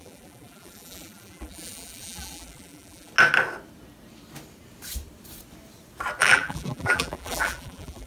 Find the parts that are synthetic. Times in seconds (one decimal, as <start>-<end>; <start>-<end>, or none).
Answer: 0.0-3.1; 6.2-8.1